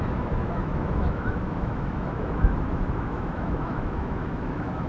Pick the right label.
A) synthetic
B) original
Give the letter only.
A